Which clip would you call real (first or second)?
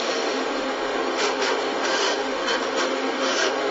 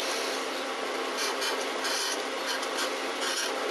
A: second